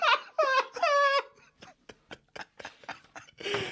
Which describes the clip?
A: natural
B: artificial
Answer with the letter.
A